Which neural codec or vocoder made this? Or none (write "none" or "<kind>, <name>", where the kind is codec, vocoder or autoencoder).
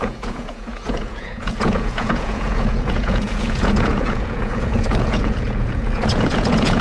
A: vocoder, Vocos